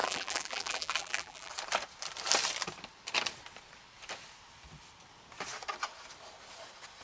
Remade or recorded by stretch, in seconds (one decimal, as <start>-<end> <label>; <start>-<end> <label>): 0.0-1.5 remade; 1.5-7.0 recorded